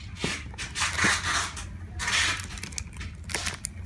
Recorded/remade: recorded